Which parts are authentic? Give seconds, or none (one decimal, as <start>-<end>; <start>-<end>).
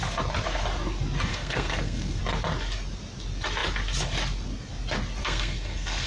0.0-1.3; 2.2-5.2